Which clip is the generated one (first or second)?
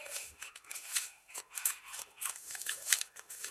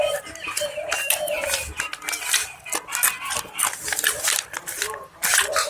first